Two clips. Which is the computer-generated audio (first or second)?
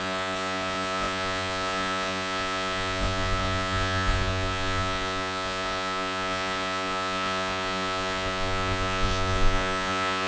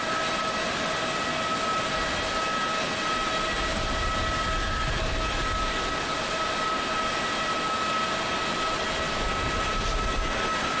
first